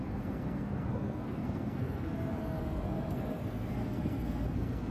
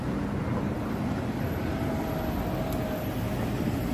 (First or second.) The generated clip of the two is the first